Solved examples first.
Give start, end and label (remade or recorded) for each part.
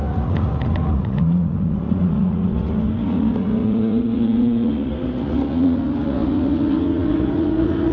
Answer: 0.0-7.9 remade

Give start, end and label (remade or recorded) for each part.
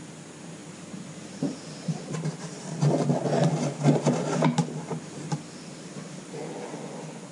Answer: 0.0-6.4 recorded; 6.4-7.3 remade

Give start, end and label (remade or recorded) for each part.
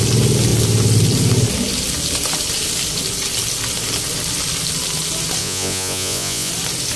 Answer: 0.0-5.4 recorded; 5.4-6.5 remade; 6.5-7.0 recorded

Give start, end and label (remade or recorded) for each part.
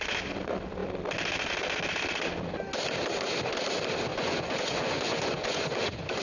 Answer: 0.0-4.1 recorded; 4.1-6.2 remade